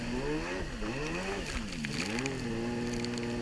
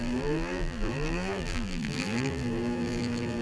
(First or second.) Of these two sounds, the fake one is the second